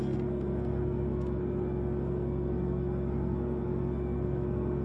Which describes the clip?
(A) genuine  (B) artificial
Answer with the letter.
B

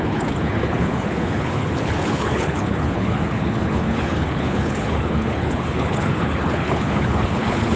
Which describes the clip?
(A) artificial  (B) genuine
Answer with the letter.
A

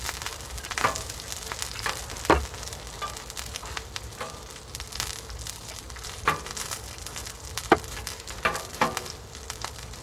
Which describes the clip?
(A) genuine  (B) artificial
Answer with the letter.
A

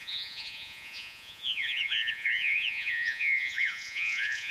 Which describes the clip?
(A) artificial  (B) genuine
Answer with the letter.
A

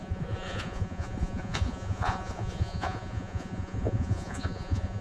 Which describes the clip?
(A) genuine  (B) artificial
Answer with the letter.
B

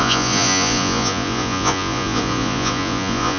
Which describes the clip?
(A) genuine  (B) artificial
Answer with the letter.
B